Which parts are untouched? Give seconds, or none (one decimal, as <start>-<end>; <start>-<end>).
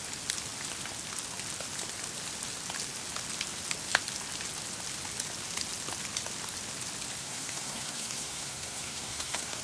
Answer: 0.0-7.2